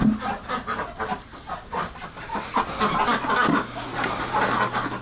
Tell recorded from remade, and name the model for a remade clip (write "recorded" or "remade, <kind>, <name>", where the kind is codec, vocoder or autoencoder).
recorded